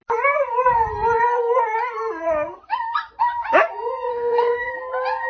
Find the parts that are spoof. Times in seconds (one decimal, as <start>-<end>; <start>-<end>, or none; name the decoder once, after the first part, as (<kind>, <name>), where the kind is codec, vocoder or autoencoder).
4.1-4.7 (autoencoder, DAC-VAE)